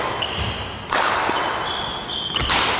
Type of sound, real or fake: real